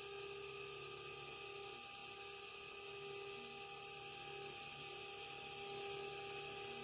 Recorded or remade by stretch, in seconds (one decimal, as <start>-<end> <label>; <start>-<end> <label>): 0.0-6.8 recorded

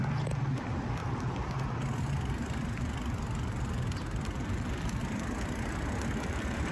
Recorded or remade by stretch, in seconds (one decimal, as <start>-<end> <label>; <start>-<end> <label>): 0.0-6.7 recorded

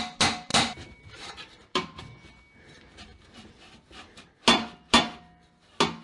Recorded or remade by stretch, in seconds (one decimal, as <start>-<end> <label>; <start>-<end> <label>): 0.0-0.5 recorded; 0.5-2.0 remade; 2.0-6.0 recorded

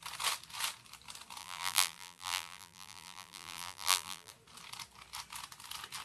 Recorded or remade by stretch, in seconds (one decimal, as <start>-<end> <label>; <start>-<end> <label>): 0.0-1.4 recorded; 1.4-4.3 remade; 4.3-6.0 recorded

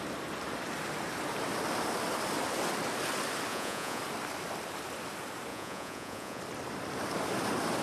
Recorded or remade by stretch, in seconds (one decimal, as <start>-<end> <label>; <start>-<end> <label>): 0.0-3.5 recorded; 3.5-4.0 remade; 4.0-5.5 recorded; 5.5-6.4 remade; 6.4-7.8 recorded

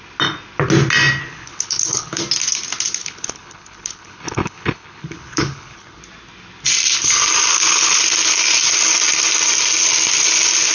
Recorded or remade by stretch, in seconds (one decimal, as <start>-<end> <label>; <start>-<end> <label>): 0.0-1.2 recorded; 1.2-2.2 remade; 2.2-3.0 recorded; 3.0-6.0 remade; 6.0-7.5 recorded; 7.5-8.0 remade; 8.0-10.7 recorded